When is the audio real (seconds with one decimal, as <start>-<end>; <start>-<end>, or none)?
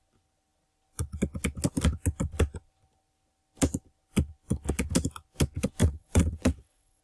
0.0-5.8